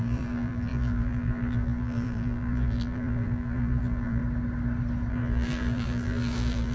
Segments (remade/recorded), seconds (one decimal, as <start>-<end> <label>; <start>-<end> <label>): 0.0-4.2 remade; 4.2-5.1 recorded; 5.1-6.7 remade